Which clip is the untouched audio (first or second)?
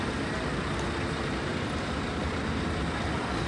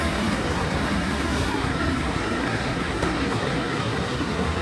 first